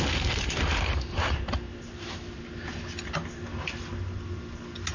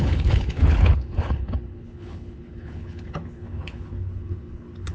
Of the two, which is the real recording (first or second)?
first